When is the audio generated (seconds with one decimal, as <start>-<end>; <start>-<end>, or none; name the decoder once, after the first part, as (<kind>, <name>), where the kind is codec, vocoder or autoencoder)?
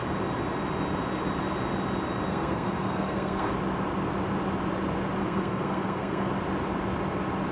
2.3-3.5 (codec, SNAC); 5.2-6.3